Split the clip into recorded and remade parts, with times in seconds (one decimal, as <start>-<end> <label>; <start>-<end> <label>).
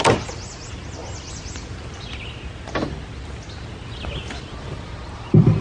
0.0-5.6 recorded